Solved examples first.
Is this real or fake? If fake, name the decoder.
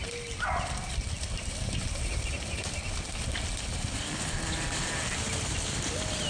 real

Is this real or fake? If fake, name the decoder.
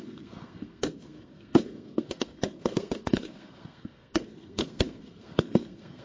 fake, codec, SNAC